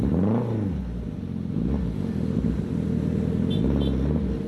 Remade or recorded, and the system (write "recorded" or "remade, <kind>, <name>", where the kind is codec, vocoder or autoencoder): recorded